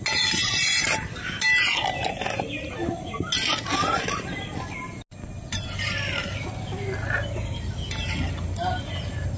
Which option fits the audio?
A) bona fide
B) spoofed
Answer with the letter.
A